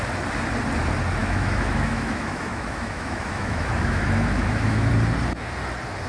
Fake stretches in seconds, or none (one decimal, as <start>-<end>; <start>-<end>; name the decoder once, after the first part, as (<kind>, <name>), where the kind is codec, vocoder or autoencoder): 1.2-4.9 (autoencoder, DAC-VAE)